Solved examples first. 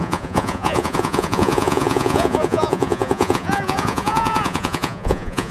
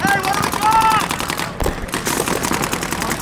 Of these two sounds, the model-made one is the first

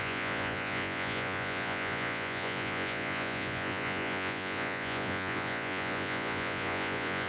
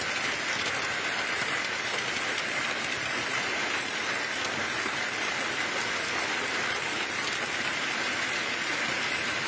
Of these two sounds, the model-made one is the first